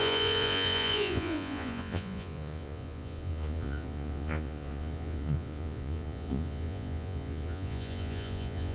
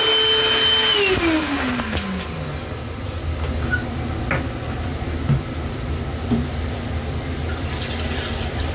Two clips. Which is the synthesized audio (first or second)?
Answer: first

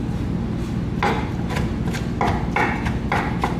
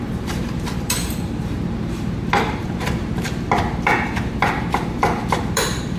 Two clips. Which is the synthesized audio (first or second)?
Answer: second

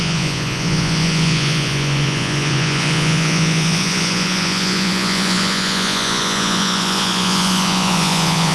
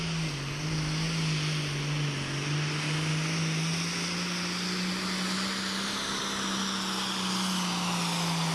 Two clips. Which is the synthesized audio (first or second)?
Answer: first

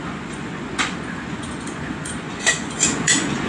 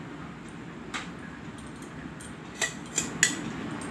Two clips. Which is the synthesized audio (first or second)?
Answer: first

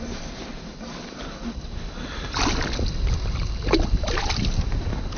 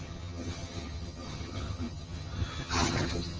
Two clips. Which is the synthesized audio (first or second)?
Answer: second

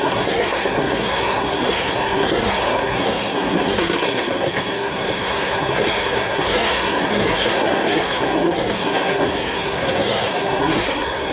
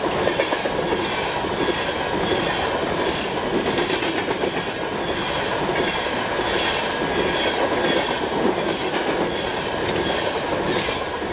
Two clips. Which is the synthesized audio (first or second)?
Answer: first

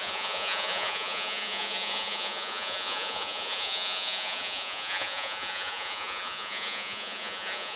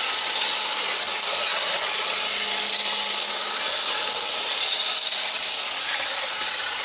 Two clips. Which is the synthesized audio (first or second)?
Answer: first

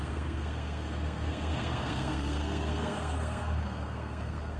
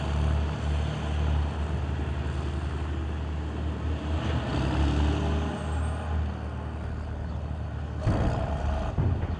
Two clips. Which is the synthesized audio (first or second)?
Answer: first